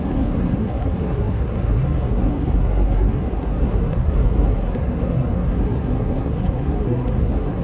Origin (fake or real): fake